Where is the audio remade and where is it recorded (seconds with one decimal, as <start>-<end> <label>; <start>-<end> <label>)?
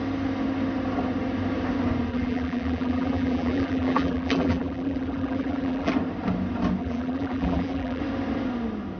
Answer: 0.0-2.1 recorded; 2.1-5.9 remade; 5.9-6.8 recorded; 6.8-8.0 remade; 8.0-9.0 recorded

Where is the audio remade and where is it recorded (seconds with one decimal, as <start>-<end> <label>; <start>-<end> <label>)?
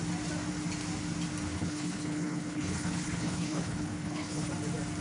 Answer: 0.0-1.5 recorded; 1.5-4.5 remade; 4.5-5.0 recorded